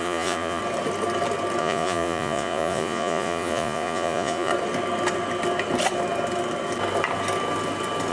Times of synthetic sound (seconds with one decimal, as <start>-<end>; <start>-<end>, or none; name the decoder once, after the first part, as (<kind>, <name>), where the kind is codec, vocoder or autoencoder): 0.0-0.6 (vocoder, Vocos); 1.6-4.5